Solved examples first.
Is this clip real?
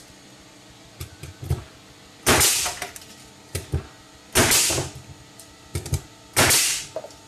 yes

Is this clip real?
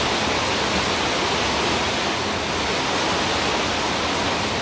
yes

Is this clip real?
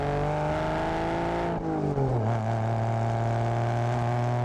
yes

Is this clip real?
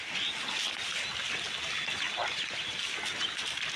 yes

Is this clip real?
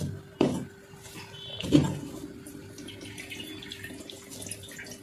yes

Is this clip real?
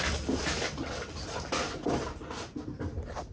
yes